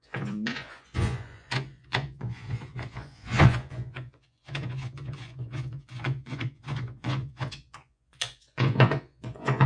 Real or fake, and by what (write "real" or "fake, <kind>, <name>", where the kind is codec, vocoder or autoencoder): fake, vocoder, Vocos